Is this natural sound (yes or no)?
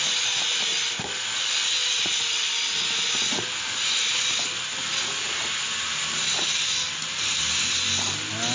yes